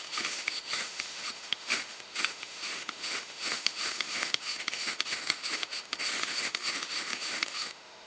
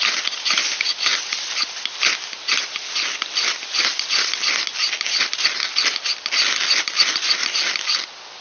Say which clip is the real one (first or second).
second